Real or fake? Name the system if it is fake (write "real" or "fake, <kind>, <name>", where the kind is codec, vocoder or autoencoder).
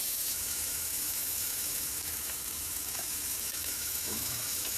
fake, autoencoder, DAC-VAE